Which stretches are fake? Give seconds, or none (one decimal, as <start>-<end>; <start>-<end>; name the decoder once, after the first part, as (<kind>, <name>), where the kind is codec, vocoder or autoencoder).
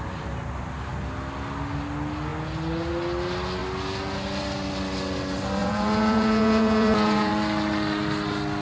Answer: 5.6-7.3 (vocoder, Vocos)